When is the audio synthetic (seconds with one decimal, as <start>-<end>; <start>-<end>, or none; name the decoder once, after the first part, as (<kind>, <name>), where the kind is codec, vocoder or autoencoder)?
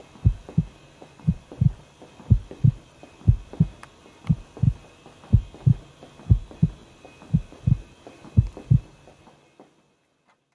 1.0-1.8 (vocoder, Vocos)